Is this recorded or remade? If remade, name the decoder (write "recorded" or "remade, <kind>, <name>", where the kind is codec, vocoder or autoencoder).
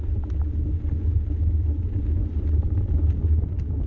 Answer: recorded